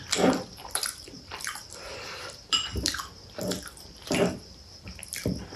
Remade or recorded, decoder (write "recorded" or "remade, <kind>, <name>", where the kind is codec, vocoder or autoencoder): remade, vocoder, BigVGAN v2